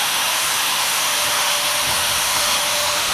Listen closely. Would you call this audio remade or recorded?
remade